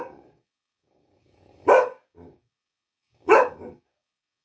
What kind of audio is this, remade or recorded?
remade